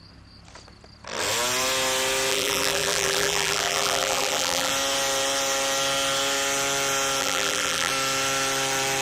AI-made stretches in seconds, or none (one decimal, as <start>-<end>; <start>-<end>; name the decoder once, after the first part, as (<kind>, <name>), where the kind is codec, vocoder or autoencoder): 2.3-4.7 (vocoder, BigVGAN v2); 7.2-7.9